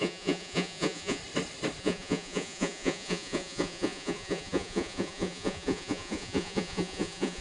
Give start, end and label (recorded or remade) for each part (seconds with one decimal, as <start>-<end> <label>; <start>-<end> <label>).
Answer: 0.0-1.2 remade; 1.2-1.8 recorded; 1.8-7.4 remade